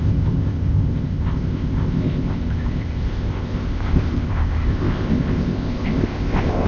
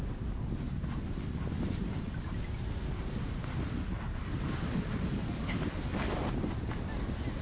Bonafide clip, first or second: second